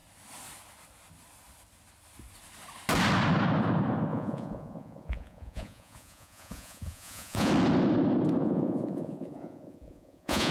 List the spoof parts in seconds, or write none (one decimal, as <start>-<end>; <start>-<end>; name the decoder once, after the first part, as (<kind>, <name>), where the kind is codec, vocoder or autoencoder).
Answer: 4.1-7.5 (vocoder, Vocos); 8.4-10.5

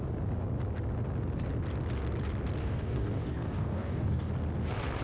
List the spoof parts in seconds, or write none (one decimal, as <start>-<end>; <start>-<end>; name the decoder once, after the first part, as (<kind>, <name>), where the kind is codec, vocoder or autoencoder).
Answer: 2.6-4.3 (codec, DAC)

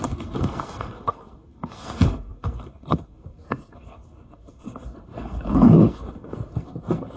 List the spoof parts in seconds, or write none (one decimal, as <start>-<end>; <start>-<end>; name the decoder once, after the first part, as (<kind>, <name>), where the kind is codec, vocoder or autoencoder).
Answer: 0.0-7.2 (codec, SNAC)

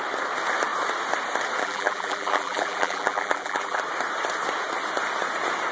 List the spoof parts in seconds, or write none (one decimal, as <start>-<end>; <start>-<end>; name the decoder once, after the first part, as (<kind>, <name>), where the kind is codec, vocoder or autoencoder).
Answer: 1.6-3.8 (vocoder, BigVGAN v2)